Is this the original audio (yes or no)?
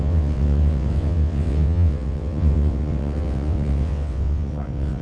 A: no